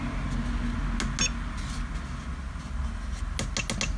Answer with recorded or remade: recorded